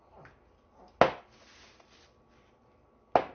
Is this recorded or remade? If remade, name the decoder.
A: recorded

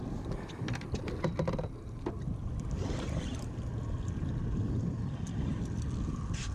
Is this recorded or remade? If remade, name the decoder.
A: recorded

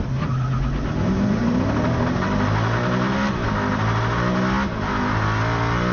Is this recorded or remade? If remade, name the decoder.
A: recorded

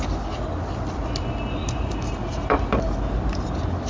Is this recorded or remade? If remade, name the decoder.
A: recorded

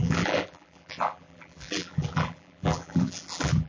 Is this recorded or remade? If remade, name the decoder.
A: remade, vocoder, BigVGAN v2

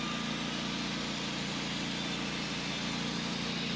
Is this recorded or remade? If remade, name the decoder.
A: recorded